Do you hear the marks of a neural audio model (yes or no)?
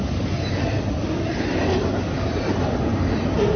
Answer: no